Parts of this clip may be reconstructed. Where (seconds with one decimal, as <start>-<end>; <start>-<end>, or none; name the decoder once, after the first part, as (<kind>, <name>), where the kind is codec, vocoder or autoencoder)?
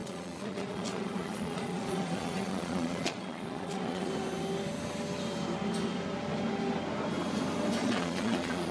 0.0-4.1 (vocoder, Vocos); 7.8-8.7